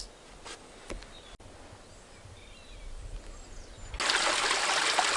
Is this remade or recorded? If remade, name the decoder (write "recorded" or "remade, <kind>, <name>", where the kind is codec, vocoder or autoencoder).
recorded